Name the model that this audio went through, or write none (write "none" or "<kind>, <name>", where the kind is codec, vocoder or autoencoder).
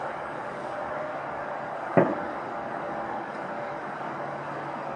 codec, DAC